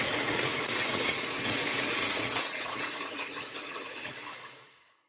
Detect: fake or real fake